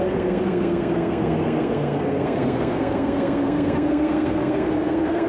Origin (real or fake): fake